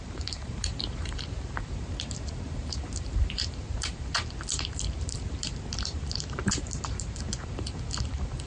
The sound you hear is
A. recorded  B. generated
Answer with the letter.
B